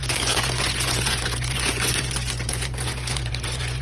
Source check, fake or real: fake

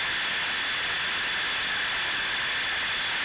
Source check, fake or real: real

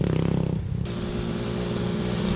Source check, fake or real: real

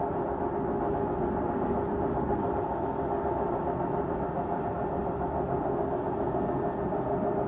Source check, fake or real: real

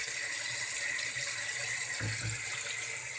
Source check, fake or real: real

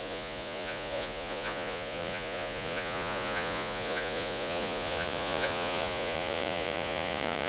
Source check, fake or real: fake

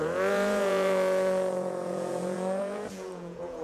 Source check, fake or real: fake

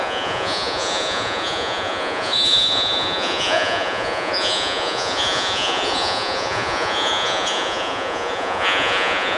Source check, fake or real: fake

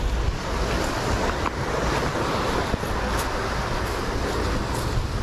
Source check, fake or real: real